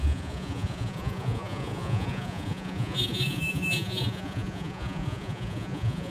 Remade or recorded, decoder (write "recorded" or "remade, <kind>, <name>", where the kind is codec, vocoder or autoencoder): remade, vocoder, Vocos